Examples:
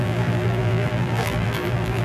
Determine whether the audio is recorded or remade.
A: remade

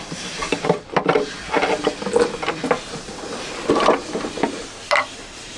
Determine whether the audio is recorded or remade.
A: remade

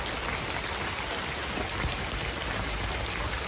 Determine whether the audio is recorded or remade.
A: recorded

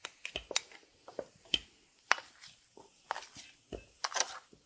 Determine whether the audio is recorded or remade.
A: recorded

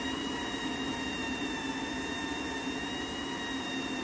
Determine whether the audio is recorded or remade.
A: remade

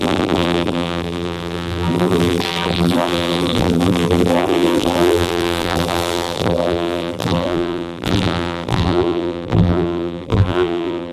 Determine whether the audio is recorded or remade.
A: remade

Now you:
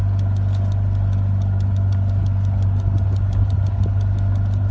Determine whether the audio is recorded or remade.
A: recorded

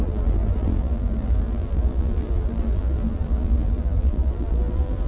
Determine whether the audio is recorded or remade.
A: remade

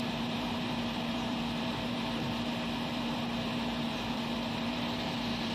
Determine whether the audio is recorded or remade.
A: remade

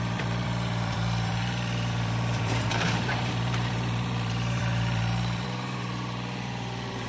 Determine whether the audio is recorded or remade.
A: remade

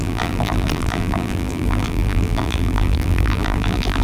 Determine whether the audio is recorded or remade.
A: remade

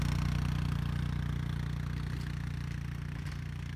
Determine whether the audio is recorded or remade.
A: recorded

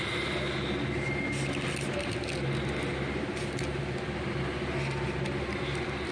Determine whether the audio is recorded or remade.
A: recorded